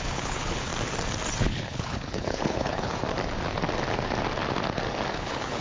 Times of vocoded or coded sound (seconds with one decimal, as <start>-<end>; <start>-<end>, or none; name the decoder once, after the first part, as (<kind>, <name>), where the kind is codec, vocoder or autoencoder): 0.0-0.7 (codec, HILCodec); 1.4-3.0; 5.1-5.6